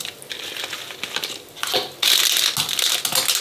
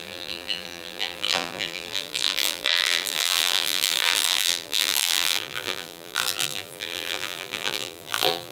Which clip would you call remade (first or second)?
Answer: second